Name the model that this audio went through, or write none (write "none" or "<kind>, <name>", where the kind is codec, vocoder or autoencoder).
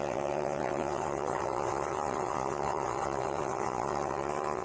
vocoder, WaveNeXt